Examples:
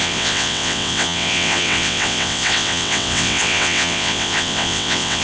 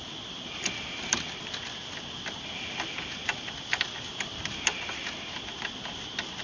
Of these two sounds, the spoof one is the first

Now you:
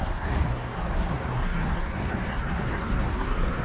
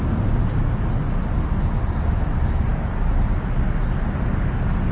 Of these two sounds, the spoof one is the first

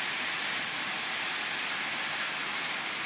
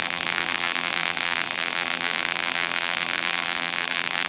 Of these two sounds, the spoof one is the second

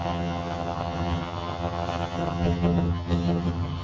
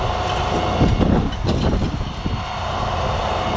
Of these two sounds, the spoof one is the first